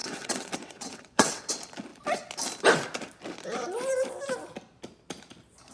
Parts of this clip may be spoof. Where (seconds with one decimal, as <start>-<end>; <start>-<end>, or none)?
0.0-1.5